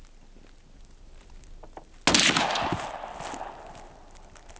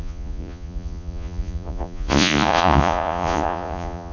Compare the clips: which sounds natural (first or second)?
first